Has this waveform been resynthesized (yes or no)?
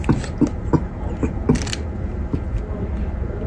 no